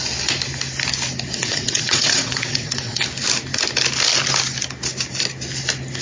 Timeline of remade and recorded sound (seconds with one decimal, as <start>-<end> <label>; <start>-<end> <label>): 0.0-1.4 recorded; 1.4-3.0 remade; 3.0-6.0 recorded